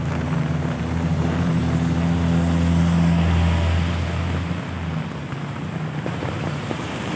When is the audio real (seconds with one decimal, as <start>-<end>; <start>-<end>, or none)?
1.6-5.4